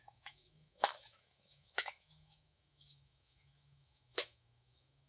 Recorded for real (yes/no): no